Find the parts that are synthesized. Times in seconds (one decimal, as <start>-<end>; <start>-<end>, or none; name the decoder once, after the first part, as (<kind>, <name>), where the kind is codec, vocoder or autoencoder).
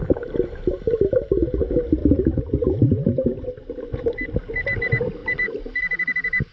2.0-4.3 (vocoder, BigVGAN v2); 5.2-5.8